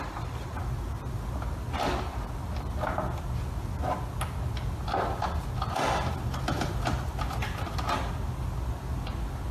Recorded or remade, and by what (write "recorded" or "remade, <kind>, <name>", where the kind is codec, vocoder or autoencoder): recorded